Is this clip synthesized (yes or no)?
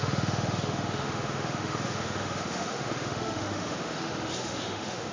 yes